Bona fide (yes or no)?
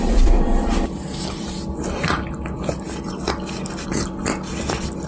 yes